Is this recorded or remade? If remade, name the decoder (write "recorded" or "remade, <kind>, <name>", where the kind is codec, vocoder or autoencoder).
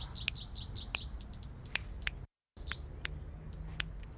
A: recorded